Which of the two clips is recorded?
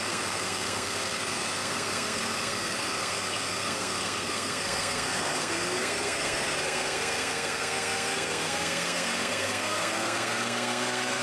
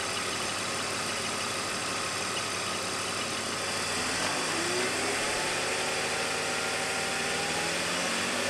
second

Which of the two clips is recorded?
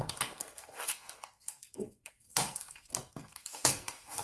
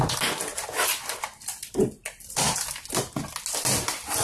second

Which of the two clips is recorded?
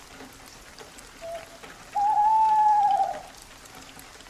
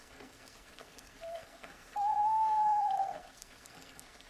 first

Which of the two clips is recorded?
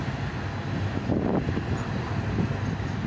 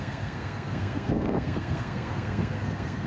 first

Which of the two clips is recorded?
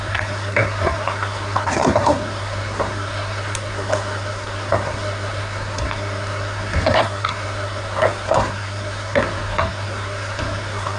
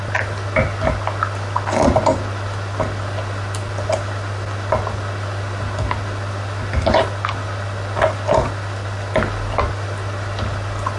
second